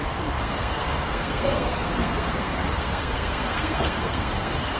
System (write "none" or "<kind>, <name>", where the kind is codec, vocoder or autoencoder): codec, SNAC